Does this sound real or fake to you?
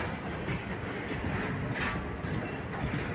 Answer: real